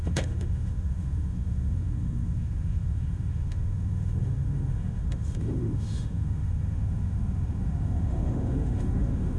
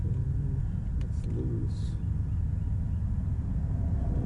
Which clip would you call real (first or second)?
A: second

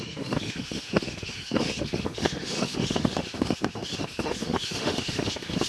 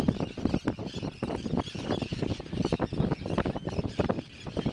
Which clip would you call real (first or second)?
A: second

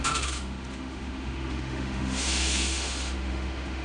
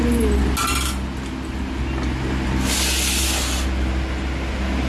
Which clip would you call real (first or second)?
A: second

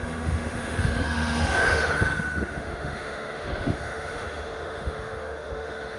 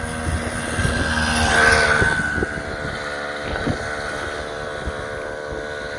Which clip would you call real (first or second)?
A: second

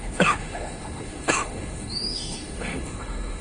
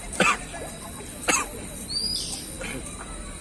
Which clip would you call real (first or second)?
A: second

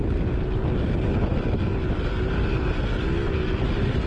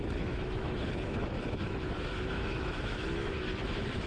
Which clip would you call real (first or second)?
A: first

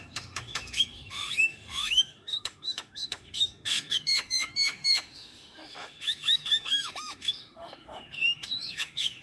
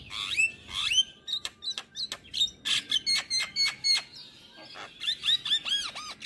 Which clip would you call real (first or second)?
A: second